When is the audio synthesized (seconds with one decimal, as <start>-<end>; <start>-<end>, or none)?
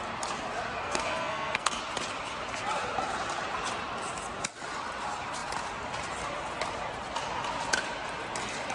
0.8-1.8